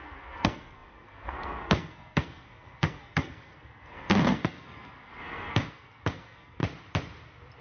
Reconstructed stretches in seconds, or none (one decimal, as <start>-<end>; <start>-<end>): 0.0-6.6